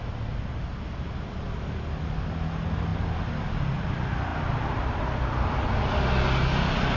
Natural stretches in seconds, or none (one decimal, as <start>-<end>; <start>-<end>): 0.0-7.0